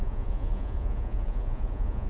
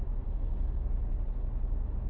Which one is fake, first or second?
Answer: first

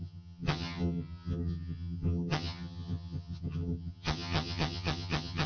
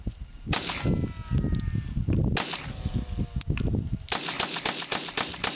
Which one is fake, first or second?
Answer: first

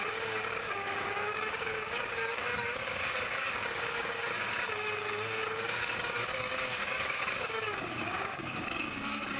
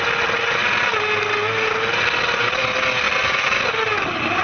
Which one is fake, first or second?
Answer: first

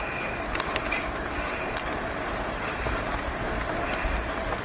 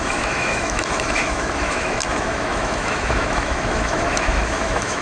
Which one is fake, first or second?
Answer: second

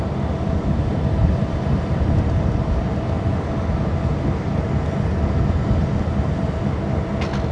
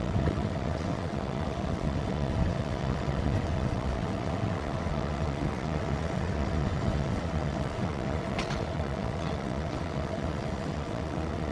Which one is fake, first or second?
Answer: second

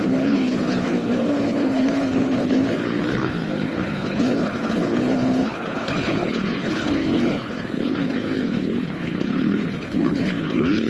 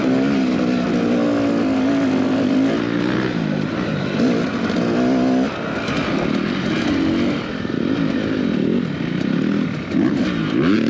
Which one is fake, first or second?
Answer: first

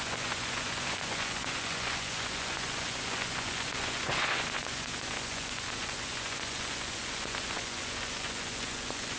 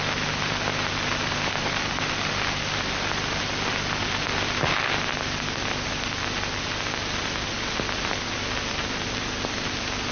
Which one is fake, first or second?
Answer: first